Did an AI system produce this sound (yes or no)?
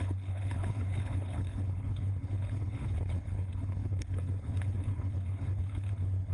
yes